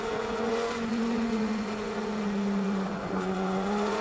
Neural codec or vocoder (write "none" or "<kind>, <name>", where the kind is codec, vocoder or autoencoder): vocoder, Vocos